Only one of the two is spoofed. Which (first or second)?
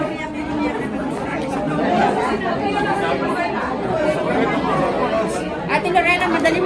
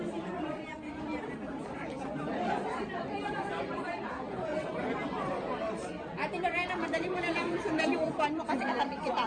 second